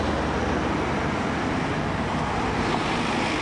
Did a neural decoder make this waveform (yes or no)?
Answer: no